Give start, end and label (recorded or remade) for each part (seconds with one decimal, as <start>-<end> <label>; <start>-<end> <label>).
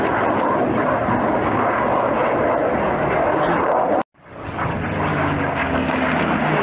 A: 0.0-1.4 recorded; 1.4-2.1 remade; 2.1-5.1 recorded; 5.1-6.6 remade